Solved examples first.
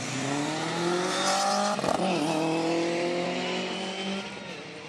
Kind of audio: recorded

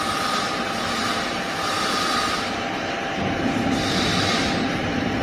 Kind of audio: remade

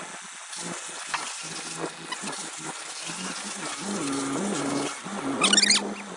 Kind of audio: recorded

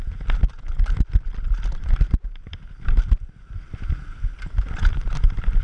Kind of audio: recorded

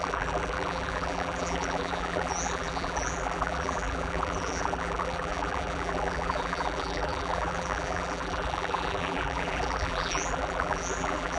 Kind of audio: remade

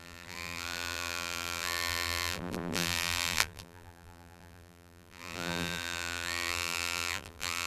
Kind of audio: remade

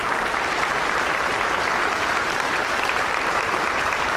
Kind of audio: remade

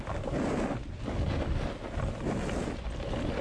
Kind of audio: recorded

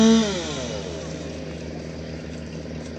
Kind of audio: recorded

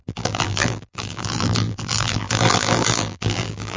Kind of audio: remade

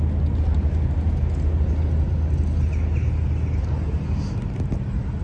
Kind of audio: recorded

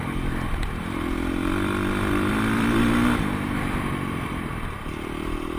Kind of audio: remade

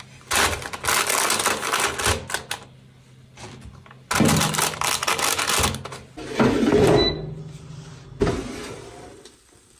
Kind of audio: recorded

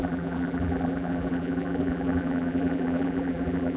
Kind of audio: remade